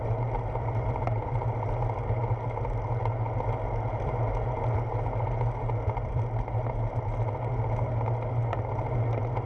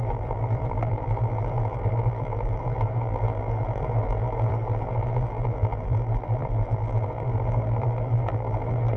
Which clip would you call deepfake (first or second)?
second